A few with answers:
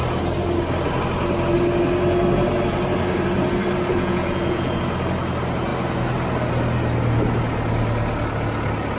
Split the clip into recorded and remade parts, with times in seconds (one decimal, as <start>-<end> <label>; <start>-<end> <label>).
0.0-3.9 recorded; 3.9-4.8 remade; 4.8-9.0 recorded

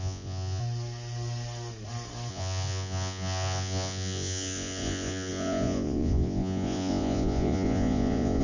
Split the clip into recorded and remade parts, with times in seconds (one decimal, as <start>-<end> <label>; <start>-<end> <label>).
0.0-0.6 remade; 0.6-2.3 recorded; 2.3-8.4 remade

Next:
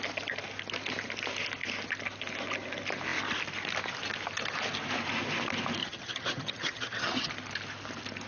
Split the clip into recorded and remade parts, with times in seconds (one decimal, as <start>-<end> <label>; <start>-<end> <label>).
0.0-5.8 recorded; 5.8-7.3 remade; 7.3-8.3 recorded

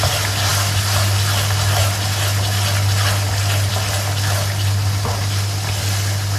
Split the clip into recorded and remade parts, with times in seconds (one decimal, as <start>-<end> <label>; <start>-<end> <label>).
0.0-6.4 recorded

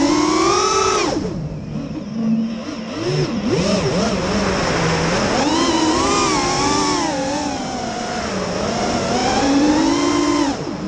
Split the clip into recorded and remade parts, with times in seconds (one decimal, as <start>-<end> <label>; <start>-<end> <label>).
0.0-9.2 recorded; 9.2-9.7 remade; 9.7-10.9 recorded

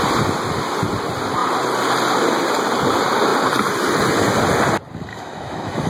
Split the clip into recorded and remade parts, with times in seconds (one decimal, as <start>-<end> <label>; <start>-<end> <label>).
0.0-5.1 recorded; 5.1-5.9 remade

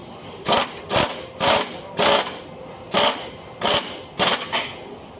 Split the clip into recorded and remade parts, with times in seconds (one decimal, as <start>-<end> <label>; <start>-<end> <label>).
0.0-5.2 recorded